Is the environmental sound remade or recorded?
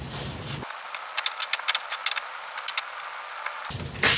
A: recorded